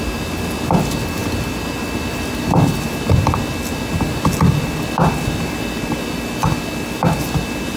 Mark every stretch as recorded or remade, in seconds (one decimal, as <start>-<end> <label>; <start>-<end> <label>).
0.0-7.8 recorded